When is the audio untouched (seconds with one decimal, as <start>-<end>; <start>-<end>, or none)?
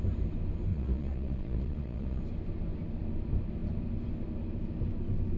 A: 0.0-0.7; 2.2-5.4